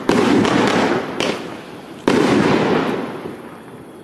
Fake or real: real